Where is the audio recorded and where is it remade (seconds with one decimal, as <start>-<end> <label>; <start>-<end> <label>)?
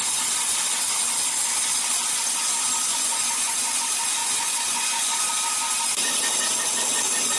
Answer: 0.0-2.9 recorded; 2.9-3.8 remade; 3.8-4.2 recorded; 4.2-5.3 remade; 5.3-7.4 recorded